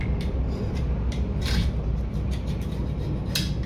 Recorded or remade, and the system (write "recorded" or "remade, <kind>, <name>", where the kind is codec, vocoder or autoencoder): recorded